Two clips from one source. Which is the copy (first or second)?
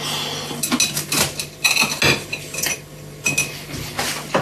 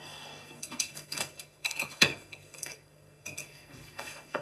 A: second